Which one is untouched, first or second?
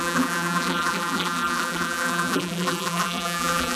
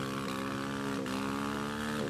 second